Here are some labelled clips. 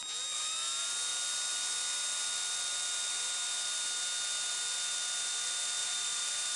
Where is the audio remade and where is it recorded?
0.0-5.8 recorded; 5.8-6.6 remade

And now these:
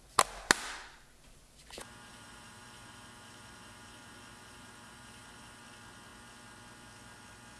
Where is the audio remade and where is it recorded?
0.0-2.1 recorded; 2.1-5.6 remade; 5.6-7.6 recorded

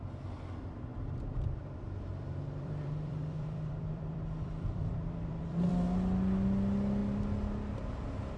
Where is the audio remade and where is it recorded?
0.0-0.9 recorded; 0.9-5.7 remade; 5.7-8.4 recorded